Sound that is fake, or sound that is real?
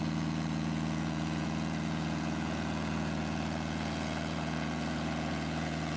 fake